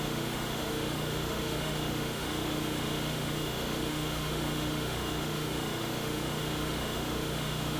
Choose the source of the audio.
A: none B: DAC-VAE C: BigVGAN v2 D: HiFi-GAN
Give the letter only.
B